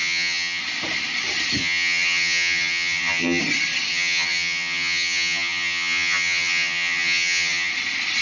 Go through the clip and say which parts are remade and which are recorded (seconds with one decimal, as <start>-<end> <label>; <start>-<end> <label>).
0.0-0.6 remade; 0.6-1.6 recorded; 1.6-3.4 remade; 3.4-3.9 recorded; 3.9-7.7 remade; 7.7-8.2 recorded